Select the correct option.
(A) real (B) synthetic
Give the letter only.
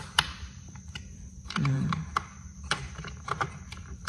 B